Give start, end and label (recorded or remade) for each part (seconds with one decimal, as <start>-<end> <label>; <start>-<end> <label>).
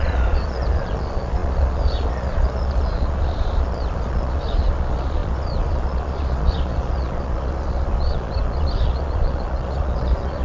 0.0-10.4 remade